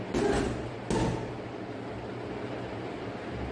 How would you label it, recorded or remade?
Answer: recorded